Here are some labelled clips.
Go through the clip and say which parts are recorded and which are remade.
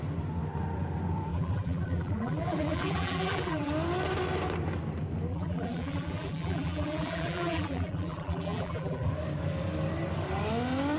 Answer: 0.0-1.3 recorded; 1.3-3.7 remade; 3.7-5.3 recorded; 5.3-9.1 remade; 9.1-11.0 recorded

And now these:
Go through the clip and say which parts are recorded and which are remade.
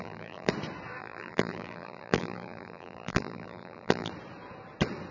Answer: 0.0-0.5 remade; 0.5-1.0 recorded; 1.0-4.1 remade; 4.1-5.1 recorded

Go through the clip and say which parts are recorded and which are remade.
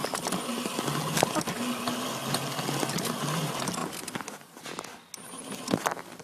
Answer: 0.0-6.2 recorded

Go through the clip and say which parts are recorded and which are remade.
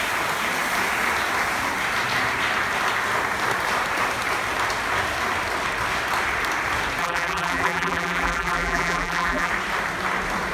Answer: 0.0-7.0 recorded; 7.0-9.5 remade; 9.5-10.5 recorded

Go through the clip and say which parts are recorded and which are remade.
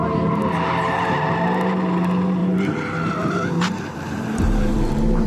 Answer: 0.0-1.1 remade; 1.1-2.4 recorded; 2.4-5.3 remade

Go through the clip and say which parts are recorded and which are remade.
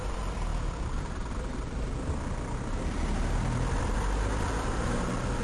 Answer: 0.0-0.5 remade; 0.5-3.7 recorded; 3.7-5.4 remade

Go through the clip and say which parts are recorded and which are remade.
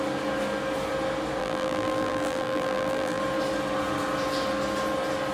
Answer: 0.0-1.4 recorded; 1.4-3.2 remade; 3.2-5.3 recorded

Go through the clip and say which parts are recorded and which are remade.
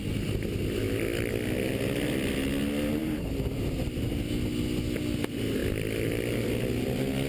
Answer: 0.0-3.0 recorded; 3.0-4.3 remade; 4.3-7.3 recorded